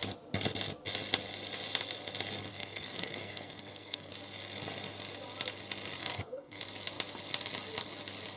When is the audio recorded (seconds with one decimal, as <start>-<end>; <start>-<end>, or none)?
0.0-2.5; 4.1-6.0; 6.6-8.4